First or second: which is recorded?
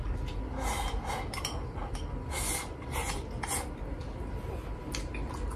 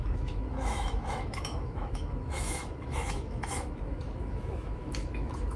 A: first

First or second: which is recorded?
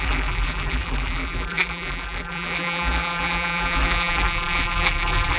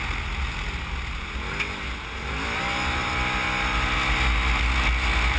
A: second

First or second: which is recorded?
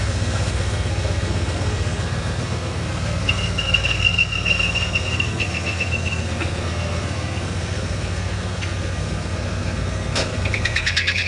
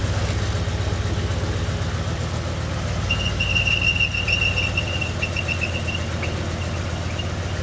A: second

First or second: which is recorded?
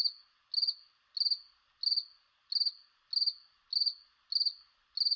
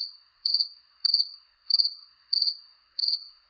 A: first